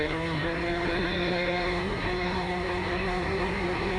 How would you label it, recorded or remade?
remade